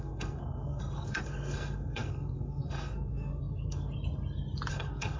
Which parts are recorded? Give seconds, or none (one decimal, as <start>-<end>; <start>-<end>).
3.9-4.7